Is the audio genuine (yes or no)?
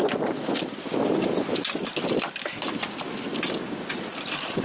yes